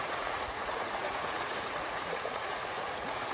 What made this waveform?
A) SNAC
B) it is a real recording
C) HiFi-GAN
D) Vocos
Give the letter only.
D